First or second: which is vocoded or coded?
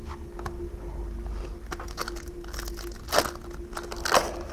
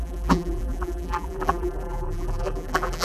second